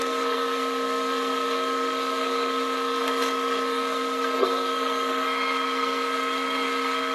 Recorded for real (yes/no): no